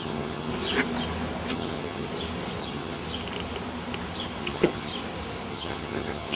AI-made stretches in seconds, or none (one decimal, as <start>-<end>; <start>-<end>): 0.0-0.5; 1.5-2.1; 2.6-3.0; 4.4-4.9; 5.5-6.3